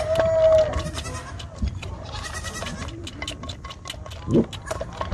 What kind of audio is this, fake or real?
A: real